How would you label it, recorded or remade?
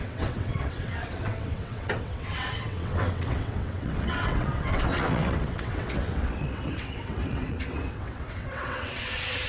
remade